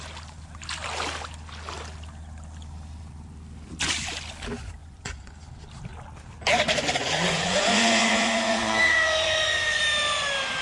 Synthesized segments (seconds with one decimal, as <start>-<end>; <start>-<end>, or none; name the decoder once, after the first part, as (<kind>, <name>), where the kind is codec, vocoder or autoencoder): 4.8-5.3 (vocoder, Vocos); 7.0-9.8